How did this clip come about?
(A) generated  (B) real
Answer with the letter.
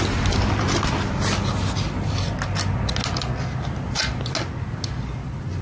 B